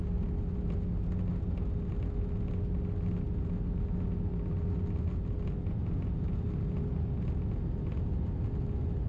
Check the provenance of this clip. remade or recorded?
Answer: recorded